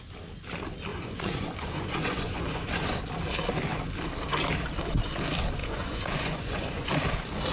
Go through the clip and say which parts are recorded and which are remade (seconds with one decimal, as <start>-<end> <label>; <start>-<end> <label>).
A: 0.0-0.9 recorded; 0.9-3.0 remade; 3.0-5.6 recorded; 5.6-6.9 remade; 6.9-7.5 recorded